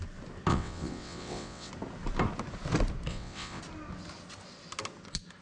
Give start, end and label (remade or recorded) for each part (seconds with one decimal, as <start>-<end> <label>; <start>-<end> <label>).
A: 0.0-0.5 recorded; 0.5-1.7 remade; 1.7-3.1 recorded; 3.1-3.6 remade; 3.6-5.4 recorded

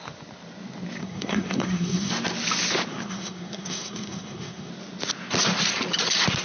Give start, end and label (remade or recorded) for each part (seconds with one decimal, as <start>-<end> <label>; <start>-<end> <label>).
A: 0.0-1.0 recorded; 1.0-2.1 remade; 2.1-2.9 recorded; 2.9-4.7 remade; 4.7-6.4 recorded